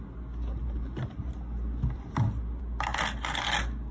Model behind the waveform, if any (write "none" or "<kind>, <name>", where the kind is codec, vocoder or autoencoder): none